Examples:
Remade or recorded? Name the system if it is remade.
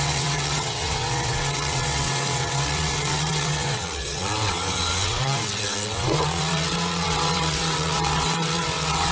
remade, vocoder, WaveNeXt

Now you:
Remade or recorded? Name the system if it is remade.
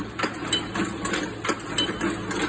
recorded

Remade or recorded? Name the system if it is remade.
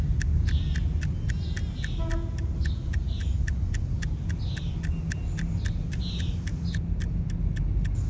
recorded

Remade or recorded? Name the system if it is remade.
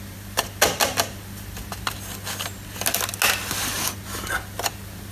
recorded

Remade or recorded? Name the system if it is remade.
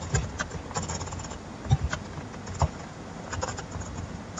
recorded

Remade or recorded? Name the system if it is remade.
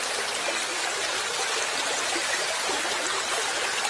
recorded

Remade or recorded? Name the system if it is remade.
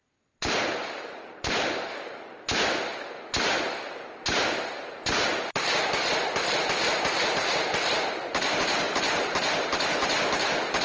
recorded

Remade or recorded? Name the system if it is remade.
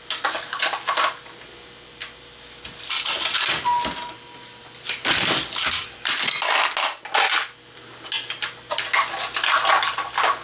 recorded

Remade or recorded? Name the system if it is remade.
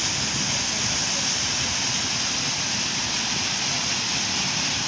recorded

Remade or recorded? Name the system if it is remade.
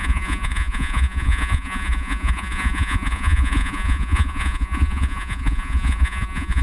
remade, vocoder, Vocos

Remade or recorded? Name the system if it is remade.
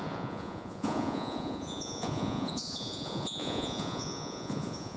remade, vocoder, Vocos